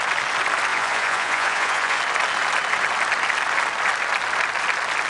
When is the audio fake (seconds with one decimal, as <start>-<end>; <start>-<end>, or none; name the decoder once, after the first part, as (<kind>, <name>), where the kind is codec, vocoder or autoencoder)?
0.7-2.0 (vocoder, Vocos)